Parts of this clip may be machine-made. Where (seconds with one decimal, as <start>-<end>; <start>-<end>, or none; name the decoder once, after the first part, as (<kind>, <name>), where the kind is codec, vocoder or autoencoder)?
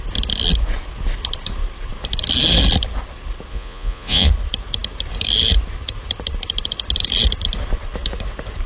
3.5-4.3 (vocoder, Vocos)